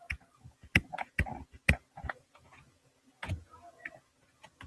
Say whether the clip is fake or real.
fake